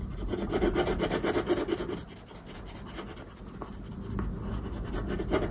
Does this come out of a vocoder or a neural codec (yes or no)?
no